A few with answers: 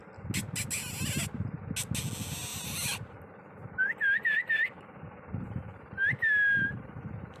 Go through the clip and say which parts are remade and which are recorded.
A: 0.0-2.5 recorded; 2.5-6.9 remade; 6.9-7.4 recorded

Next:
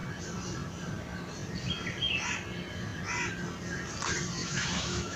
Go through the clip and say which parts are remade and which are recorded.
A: 0.0-4.4 recorded; 4.4-5.2 remade

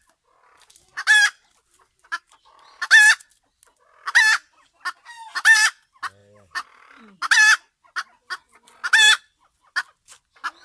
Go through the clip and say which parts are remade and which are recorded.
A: 0.0-6.2 recorded; 6.2-7.0 remade; 7.0-10.6 recorded

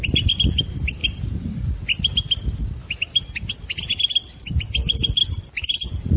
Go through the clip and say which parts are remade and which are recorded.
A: 0.0-1.0 remade; 1.0-4.4 recorded; 4.4-5.2 remade; 5.2-6.2 recorded